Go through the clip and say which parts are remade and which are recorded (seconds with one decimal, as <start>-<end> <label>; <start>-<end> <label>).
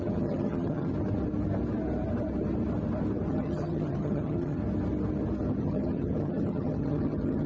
0.0-0.9 remade; 0.9-3.3 recorded; 3.3-4.6 remade; 4.6-5.6 recorded; 5.6-7.5 remade